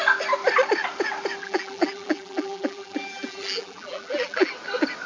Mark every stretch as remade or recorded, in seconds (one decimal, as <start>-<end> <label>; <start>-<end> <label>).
0.0-1.4 recorded; 1.4-4.5 remade; 4.5-5.1 recorded